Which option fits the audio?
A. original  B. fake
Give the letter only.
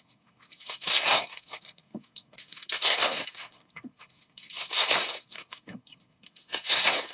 B